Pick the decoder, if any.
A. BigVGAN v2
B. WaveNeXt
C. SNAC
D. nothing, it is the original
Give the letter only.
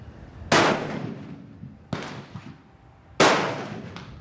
D